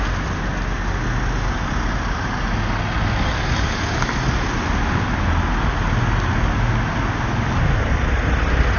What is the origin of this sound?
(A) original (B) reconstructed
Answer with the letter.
A